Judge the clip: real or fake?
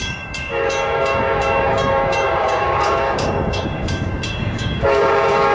fake